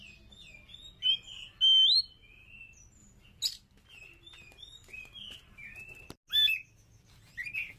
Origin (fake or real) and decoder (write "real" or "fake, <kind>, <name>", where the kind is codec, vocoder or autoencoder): real